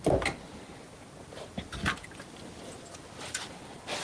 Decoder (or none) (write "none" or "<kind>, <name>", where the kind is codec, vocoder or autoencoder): none